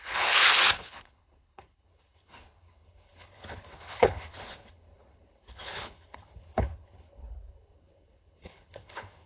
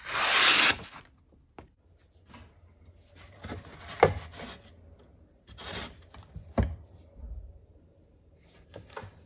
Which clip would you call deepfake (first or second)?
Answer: first